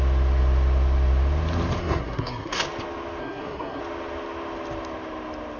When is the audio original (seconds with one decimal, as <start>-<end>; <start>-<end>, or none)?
0.0-1.8; 2.6-3.2; 3.8-5.6